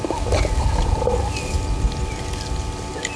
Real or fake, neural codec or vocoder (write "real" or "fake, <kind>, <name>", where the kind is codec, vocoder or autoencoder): real